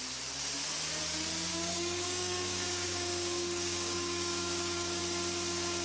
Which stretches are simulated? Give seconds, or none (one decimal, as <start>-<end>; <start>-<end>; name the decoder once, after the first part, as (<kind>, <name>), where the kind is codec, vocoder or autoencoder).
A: 1.5-5.0 (codec, DAC)